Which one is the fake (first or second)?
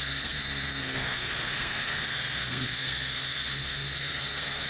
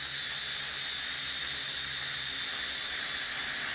first